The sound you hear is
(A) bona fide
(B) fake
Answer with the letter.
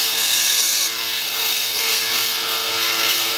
B